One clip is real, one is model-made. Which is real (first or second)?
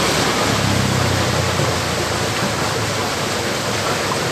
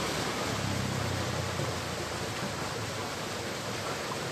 first